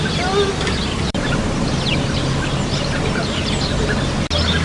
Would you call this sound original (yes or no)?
yes